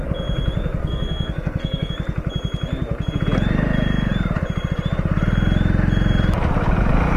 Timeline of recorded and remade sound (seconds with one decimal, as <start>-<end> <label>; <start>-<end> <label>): 0.0-0.8 recorded; 0.8-1.9 remade; 1.9-7.2 recorded